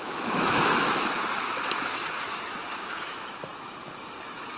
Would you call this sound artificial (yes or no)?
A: yes